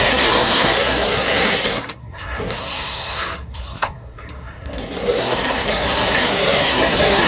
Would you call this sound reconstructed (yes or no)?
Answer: yes